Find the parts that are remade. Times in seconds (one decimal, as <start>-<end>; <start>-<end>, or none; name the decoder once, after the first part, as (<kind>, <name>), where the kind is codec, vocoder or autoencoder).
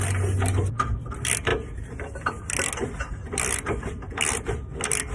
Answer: none